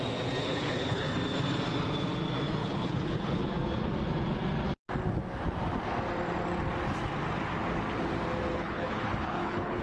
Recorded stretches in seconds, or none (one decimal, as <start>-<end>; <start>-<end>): 0.0-0.4; 1.1-2.6; 3.4-8.5